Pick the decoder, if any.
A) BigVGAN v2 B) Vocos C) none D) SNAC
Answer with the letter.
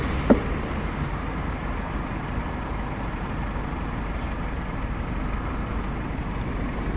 A